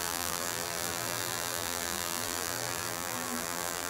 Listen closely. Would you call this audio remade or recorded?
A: remade